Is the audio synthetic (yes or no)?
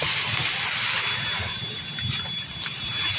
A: no